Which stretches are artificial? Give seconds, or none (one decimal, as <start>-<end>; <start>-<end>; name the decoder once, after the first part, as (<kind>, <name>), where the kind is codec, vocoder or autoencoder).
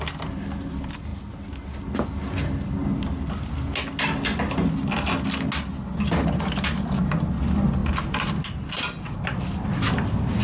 none